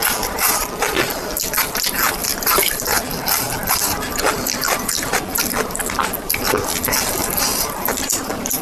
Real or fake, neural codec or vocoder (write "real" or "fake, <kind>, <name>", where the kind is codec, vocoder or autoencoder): fake, vocoder, BigVGAN v2